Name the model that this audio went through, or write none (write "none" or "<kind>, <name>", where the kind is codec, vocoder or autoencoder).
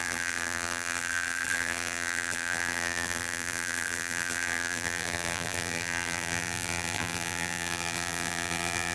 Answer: vocoder, BigVGAN v2